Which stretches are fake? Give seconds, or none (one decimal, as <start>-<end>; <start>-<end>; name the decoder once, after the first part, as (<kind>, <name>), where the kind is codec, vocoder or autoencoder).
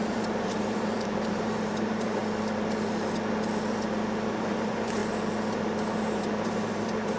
0.0-2.2 (vocoder, BigVGAN v2); 4.3-5.0; 6.0-7.2